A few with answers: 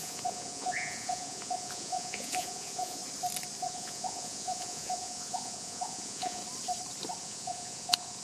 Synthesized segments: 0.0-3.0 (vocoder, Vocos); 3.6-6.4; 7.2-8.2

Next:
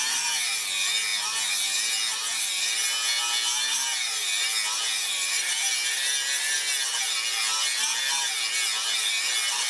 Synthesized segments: none

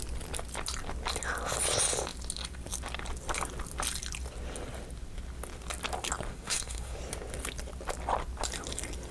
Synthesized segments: 6.3-7.0 (codec, SNAC)

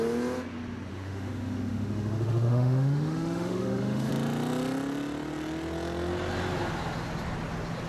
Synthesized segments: 0.9-4.1 (autoencoder, DAC-VAE)

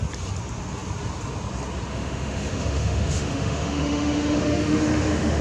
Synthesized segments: 1.9-5.4 (autoencoder, DAC-VAE)

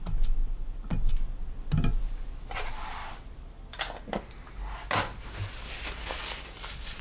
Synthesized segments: none

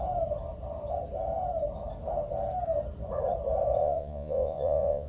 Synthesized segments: 3.8-5.1 (vocoder, Vocos)